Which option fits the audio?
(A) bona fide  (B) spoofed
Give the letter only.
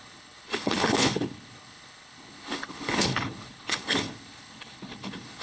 B